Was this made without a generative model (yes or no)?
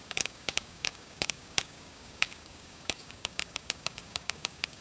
no